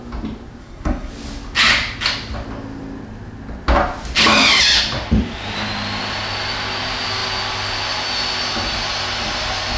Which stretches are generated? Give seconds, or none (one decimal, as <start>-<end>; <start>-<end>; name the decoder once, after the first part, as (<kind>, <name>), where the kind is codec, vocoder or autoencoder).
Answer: 0.6-1.1 (codec, SNAC)